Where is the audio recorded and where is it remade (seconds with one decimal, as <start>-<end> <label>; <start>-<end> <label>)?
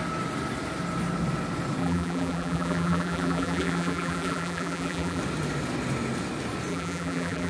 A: 0.0-1.8 recorded; 1.8-5.2 remade; 5.2-6.7 recorded; 6.7-7.5 remade